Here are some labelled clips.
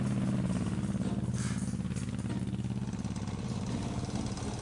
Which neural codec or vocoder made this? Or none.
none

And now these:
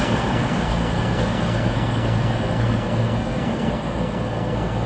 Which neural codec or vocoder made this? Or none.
codec, SNAC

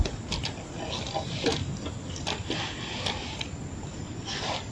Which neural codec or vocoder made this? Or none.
none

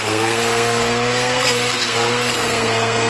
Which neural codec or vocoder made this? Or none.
codec, SNAC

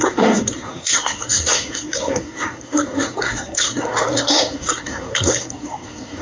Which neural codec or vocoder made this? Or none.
codec, SNAC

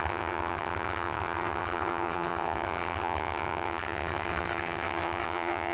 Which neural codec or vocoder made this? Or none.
vocoder, HiFi-GAN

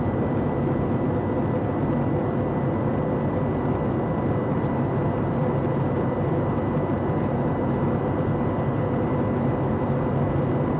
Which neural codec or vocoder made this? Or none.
none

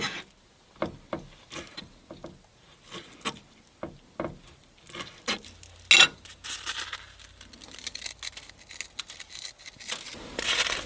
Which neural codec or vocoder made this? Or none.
none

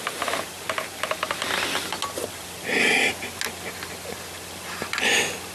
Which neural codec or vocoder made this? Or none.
none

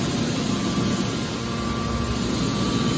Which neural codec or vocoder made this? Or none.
none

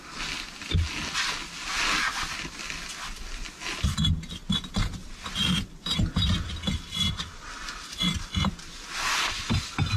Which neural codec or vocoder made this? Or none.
none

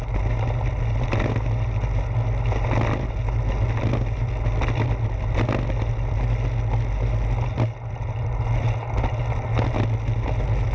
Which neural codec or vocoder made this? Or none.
none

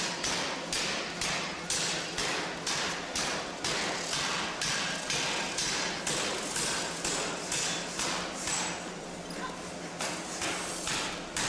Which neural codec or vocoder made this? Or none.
none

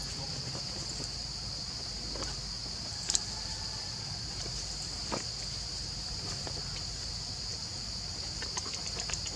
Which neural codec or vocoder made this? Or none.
none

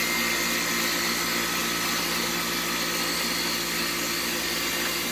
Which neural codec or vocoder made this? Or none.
none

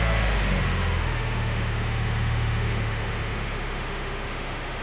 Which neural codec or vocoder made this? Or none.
autoencoder, DAC-VAE